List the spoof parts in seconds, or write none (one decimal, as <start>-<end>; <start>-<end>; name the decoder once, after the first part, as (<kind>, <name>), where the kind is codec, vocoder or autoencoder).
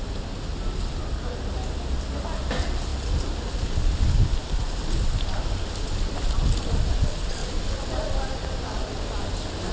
none